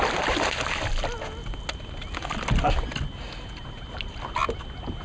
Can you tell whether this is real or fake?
real